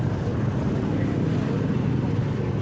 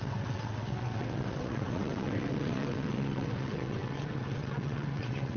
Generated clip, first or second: second